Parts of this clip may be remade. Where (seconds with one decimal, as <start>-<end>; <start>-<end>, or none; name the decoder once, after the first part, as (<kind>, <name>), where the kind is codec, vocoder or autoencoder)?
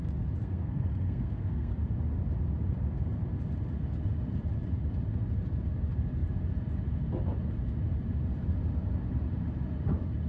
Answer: 0.4-1.7 (codec, SNAC)